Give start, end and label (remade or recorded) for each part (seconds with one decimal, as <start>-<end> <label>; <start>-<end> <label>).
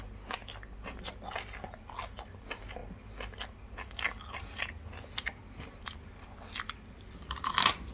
0.0-0.4 remade; 0.4-2.2 recorded; 2.2-2.8 remade; 2.8-7.3 recorded; 7.3-7.9 remade